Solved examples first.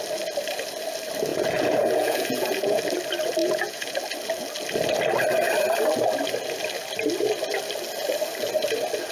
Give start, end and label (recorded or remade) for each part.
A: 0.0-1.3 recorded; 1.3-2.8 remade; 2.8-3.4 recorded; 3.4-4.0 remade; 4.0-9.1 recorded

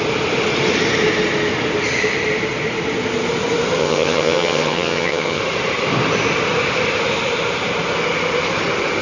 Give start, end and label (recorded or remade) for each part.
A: 0.0-3.8 recorded; 3.8-5.4 remade; 5.4-9.0 recorded

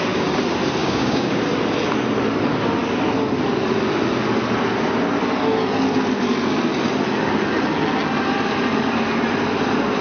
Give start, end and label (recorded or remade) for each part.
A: 0.0-0.8 recorded; 0.8-1.4 remade; 1.4-10.0 recorded

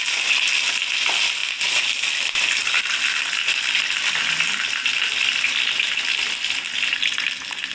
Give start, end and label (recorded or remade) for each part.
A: 0.0-1.4 recorded; 1.4-2.3 remade; 2.3-7.7 recorded

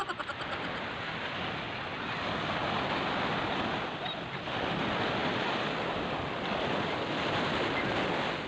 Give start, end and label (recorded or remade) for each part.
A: 0.0-8.5 recorded

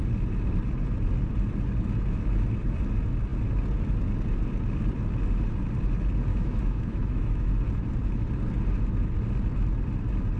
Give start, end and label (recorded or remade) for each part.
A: 0.0-6.3 recorded; 6.3-7.5 remade; 7.5-10.4 recorded

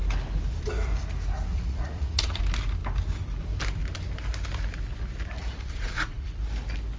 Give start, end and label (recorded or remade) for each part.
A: 0.0-1.5 recorded; 1.5-2.4 remade; 2.4-5.4 recorded; 5.4-6.4 remade; 6.4-7.0 recorded